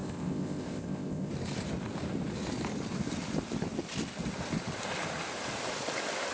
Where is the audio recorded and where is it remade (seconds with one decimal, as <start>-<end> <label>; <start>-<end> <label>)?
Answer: 0.0-1.3 remade; 1.3-6.3 recorded